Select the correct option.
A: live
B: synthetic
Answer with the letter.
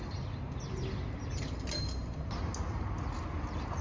A